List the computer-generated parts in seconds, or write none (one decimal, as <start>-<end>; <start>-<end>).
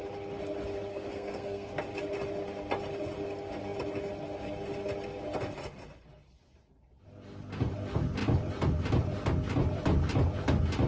0.9-1.7